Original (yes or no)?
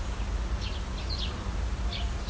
yes